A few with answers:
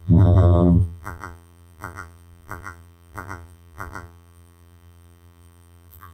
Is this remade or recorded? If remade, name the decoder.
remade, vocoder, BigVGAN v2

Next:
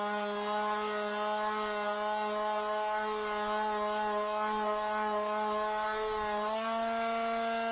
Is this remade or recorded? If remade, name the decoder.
recorded